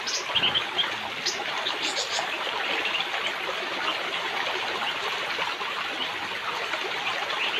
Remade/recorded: recorded